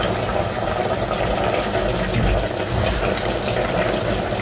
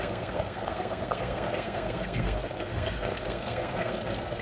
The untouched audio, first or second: first